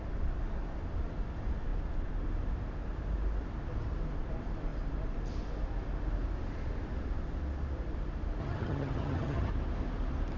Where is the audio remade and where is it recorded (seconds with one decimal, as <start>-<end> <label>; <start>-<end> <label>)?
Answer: 0.0-8.4 recorded; 8.4-9.5 remade; 9.5-10.4 recorded